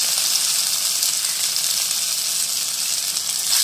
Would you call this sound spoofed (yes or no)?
no